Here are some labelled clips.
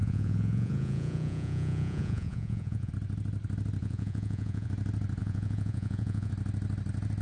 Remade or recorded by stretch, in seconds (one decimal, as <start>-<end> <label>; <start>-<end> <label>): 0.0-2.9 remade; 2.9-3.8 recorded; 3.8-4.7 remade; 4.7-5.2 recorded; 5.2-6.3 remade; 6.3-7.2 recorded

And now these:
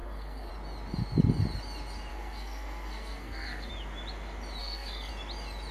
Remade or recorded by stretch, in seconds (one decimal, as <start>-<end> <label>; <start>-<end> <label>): 0.0-0.5 remade; 0.5-2.1 recorded; 2.1-3.7 remade; 3.7-4.6 recorded; 4.6-5.1 remade; 5.1-5.7 recorded

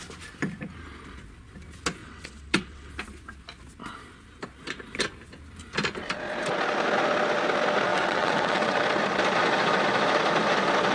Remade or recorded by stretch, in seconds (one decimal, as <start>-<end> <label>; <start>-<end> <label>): 0.0-2.0 recorded; 2.0-2.9 remade; 2.9-7.9 recorded; 7.9-8.8 remade; 8.8-10.9 recorded

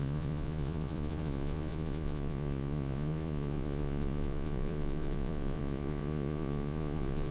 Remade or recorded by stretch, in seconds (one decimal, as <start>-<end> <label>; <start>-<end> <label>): 0.0-7.3 remade